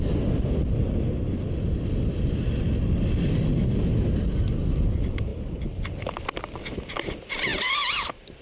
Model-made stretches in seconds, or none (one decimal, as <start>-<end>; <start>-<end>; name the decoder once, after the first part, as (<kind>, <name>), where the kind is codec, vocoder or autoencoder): none